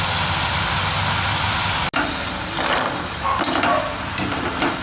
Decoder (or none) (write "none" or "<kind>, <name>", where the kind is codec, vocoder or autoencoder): none